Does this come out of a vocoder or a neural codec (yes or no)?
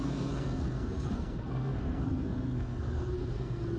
yes